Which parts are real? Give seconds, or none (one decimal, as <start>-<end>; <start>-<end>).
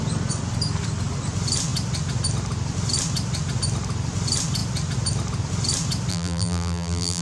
0.0-6.1